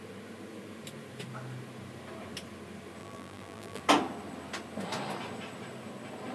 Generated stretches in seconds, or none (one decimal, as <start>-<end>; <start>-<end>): 3.0-3.8

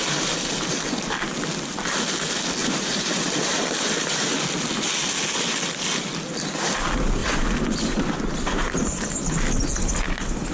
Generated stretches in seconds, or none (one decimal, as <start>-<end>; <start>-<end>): 2.6-3.9; 7.2-9.1

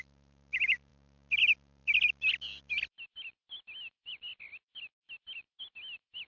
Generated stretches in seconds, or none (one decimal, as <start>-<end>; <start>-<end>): none

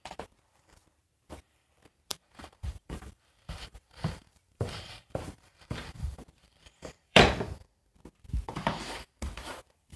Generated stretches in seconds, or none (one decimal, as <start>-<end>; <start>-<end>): 2.1-7.2

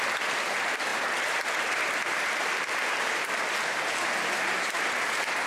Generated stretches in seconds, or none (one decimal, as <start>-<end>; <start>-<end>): 2.0-4.6

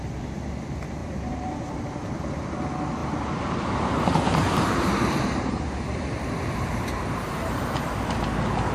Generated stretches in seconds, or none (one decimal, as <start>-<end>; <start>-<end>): 1.0-1.7; 3.0-8.2

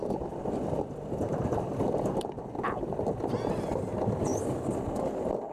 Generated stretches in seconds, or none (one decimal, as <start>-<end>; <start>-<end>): 0.0-3.3

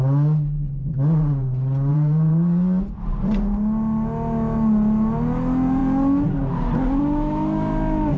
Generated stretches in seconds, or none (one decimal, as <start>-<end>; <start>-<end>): 1.9-3.4